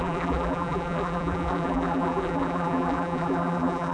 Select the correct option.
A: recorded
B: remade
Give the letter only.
B